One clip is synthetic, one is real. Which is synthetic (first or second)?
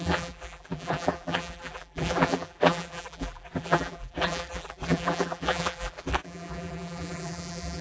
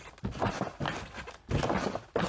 first